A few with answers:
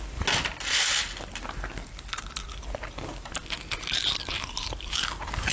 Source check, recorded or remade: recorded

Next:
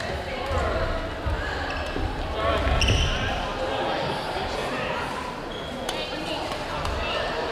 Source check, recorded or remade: recorded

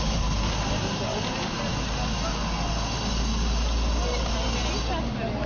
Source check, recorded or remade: recorded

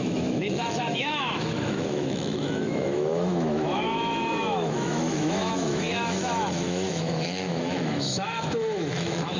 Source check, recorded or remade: remade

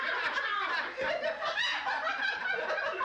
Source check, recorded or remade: recorded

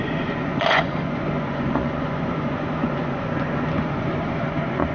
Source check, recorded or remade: remade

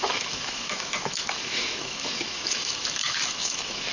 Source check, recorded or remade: remade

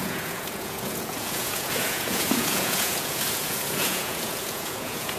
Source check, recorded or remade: remade